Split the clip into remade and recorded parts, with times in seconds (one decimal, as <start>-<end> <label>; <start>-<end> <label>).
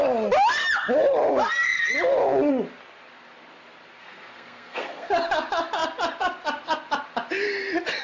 0.0-4.0 recorded; 4.0-5.1 remade; 5.1-8.0 recorded